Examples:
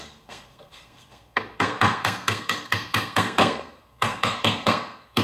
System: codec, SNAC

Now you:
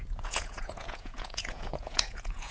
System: vocoder, Vocos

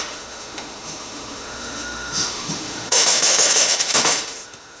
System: autoencoder, DAC-VAE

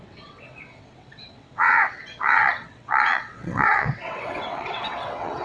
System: vocoder, WaveNeXt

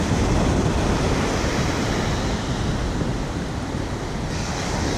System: none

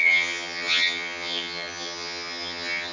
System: vocoder, HiFi-GAN